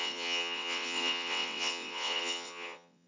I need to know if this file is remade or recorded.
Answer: remade